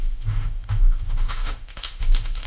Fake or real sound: fake